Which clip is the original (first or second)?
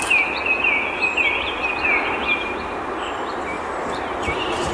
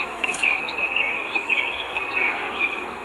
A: first